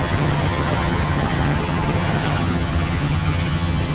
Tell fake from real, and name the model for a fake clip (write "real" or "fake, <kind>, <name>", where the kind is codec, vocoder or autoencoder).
fake, vocoder, HiFi-GAN